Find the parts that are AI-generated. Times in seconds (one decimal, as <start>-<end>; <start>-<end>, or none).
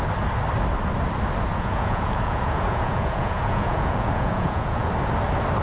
1.5-4.9